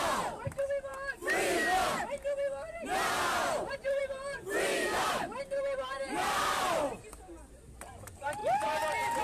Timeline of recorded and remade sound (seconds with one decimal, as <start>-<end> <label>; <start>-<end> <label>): 0.0-3.4 recorded; 3.4-4.0 remade; 4.0-8.4 recorded; 8.4-9.2 remade